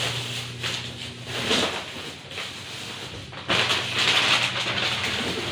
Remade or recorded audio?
recorded